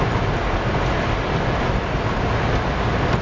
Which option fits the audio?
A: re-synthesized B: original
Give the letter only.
B